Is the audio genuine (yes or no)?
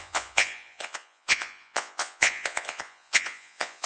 no